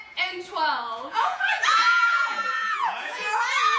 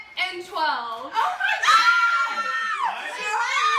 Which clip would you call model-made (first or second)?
first